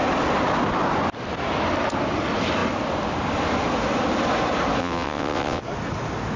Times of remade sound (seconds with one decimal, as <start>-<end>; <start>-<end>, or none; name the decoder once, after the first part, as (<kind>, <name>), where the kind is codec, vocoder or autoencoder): 4.8-5.6 (vocoder, WaveNeXt)